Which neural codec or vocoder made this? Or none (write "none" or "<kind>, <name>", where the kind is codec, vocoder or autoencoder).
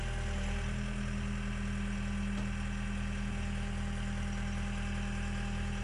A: none